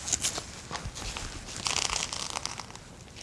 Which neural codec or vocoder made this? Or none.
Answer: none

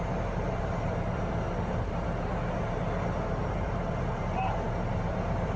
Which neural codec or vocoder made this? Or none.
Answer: vocoder, BigVGAN v2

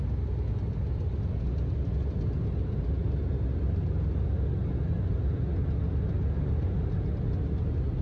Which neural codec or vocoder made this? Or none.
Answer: none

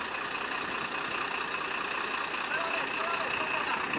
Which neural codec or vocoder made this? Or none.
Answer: none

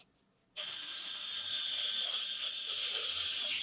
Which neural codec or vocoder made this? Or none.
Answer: vocoder, BigVGAN v2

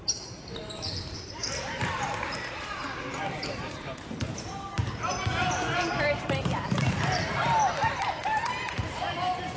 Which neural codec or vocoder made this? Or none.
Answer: vocoder, BigVGAN v2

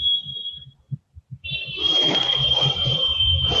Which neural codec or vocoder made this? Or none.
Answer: vocoder, BigVGAN v2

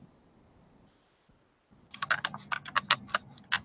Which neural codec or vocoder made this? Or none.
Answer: none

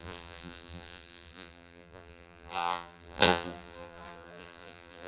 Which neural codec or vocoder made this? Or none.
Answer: vocoder, BigVGAN v2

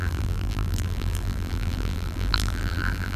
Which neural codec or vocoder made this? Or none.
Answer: vocoder, BigVGAN v2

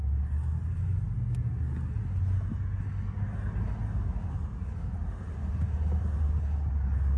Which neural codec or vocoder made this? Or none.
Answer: none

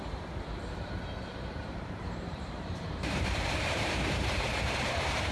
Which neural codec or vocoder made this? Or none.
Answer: vocoder, BigVGAN v2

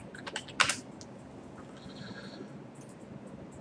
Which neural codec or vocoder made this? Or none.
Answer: none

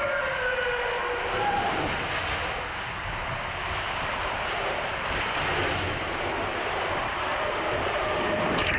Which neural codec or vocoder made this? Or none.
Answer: none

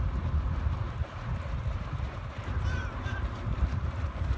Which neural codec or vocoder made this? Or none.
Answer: vocoder, BigVGAN v2